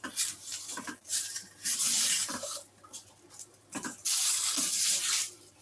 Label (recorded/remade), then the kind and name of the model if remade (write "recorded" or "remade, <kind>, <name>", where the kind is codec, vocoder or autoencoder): remade, vocoder, BigVGAN v2